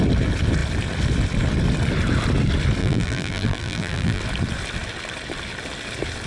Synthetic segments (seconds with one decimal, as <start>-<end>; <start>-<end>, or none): 2.8-4.2